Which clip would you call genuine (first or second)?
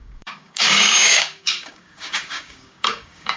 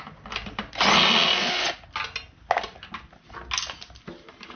second